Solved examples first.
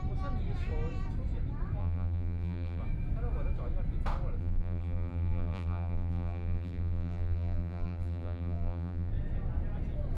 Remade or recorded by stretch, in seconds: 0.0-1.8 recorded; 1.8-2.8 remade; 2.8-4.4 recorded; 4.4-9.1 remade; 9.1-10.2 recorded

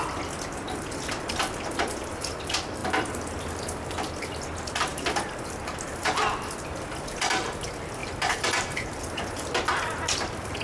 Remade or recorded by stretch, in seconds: 0.0-8.0 recorded; 8.0-9.0 remade; 9.0-10.6 recorded